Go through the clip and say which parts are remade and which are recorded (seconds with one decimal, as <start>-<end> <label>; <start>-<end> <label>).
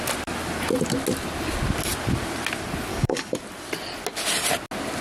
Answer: 0.0-2.9 recorded; 2.9-3.4 remade; 3.4-5.0 recorded